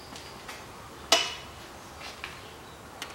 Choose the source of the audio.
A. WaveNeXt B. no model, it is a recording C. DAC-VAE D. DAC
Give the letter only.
B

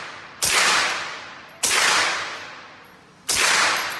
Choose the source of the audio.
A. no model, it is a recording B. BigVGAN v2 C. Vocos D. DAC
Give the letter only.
A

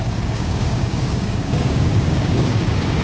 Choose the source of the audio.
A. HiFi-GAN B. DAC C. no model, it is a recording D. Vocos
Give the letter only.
B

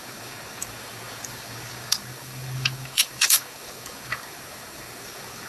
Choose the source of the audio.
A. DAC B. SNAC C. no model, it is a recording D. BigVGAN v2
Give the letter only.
A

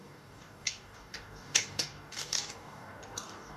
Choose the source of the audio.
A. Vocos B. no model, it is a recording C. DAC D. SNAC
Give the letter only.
C